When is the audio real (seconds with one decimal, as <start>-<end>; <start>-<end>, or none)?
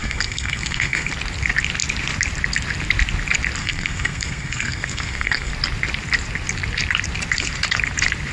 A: 1.1-3.6; 5.5-8.3